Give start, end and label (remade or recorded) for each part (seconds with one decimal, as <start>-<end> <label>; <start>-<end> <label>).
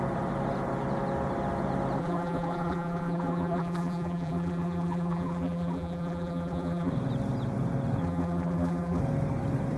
0.0-2.0 recorded; 2.0-6.9 remade; 6.9-8.0 recorded; 8.0-9.0 remade; 9.0-9.8 recorded